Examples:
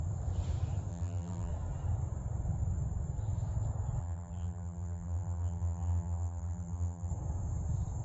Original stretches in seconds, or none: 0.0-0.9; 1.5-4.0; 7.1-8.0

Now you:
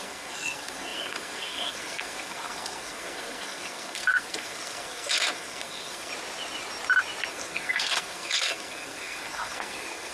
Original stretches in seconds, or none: 6.1-7.3

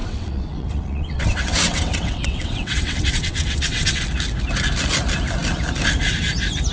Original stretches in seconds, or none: 4.0-6.7

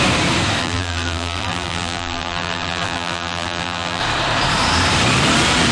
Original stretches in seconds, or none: 0.0-0.6; 4.0-5.7

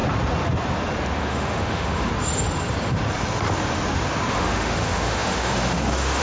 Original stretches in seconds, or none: 0.0-1.2; 2.1-4.3

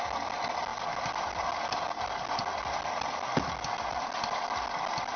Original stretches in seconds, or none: 0.0-5.2